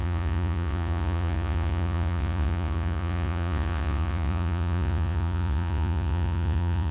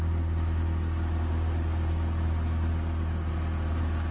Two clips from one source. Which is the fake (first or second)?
first